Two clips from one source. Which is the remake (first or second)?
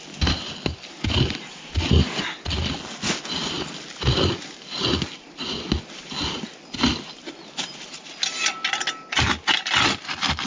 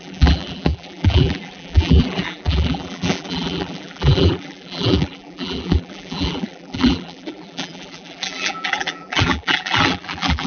second